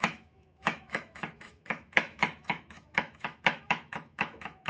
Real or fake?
fake